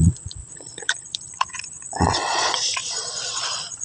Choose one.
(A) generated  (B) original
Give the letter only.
A